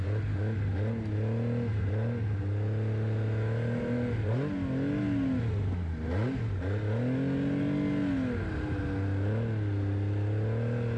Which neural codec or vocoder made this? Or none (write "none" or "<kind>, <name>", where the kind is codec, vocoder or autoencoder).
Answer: none